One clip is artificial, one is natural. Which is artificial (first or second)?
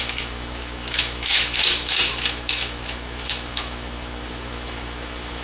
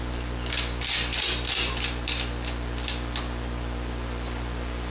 first